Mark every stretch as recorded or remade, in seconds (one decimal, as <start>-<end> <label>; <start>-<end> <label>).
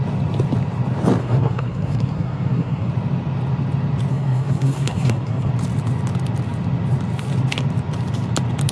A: 0.0-1.2 recorded; 1.2-2.9 remade; 2.9-4.1 recorded; 4.1-5.5 remade; 5.5-8.7 recorded